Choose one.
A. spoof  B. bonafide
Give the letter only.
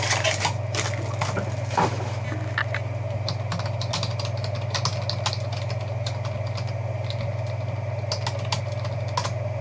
B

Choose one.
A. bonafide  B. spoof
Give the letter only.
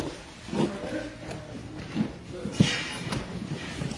A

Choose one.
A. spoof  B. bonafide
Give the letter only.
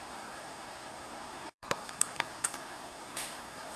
A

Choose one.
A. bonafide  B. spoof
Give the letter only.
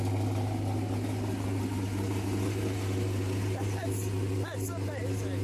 A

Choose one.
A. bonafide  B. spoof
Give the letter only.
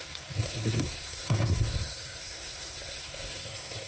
B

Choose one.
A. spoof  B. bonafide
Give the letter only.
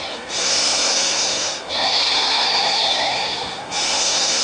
A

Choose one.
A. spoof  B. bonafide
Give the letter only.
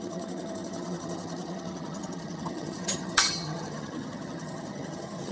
A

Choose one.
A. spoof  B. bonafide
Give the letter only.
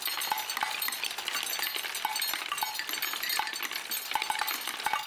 B